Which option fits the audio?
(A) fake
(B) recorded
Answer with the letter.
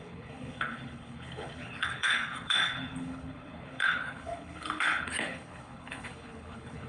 A